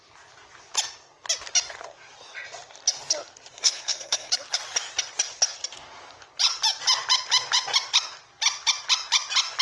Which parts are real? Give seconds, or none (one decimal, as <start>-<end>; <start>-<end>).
0.0-3.5; 4.3-9.6